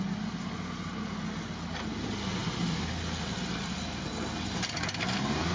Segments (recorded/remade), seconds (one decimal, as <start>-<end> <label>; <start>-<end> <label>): 0.0-5.5 recorded